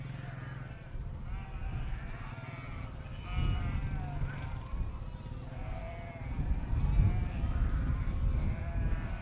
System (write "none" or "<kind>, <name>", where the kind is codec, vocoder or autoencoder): none